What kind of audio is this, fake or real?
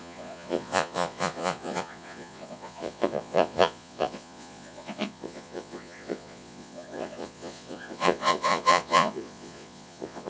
fake